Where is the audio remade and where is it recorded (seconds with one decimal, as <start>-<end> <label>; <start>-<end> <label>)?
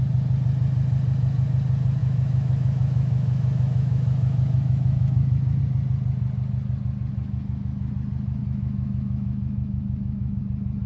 0.0-2.0 recorded; 2.0-5.6 remade; 5.6-7.1 recorded; 7.1-7.9 remade; 7.9-8.4 recorded; 8.4-10.4 remade; 10.4-10.9 recorded